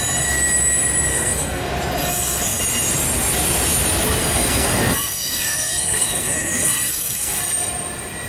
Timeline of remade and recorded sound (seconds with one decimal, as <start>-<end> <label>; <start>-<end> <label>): 0.0-1.1 recorded; 1.1-1.7 remade; 1.7-2.1 recorded; 2.1-2.6 remade; 2.6-4.2 recorded; 4.2-7.4 remade; 7.4-8.3 recorded